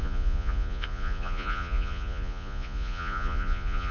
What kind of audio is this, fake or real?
fake